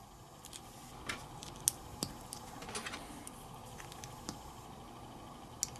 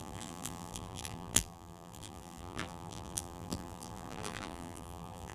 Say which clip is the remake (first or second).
second